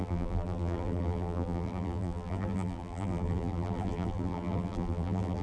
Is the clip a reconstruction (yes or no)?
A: yes